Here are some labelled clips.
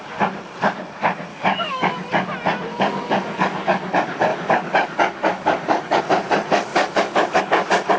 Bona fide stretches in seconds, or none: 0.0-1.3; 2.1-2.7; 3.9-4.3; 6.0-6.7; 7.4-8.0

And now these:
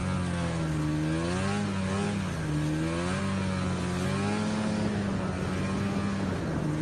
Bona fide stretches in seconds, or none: 0.0-6.8

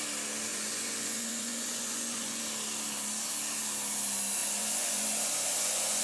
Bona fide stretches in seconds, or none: 0.0-0.5; 2.4-4.4

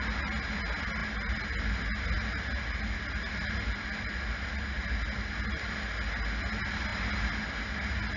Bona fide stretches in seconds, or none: 0.0-8.2

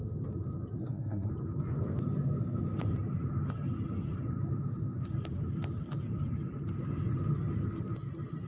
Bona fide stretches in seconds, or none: 0.0-0.8; 1.3-8.5

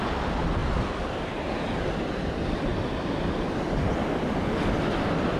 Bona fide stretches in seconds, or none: 0.0-5.4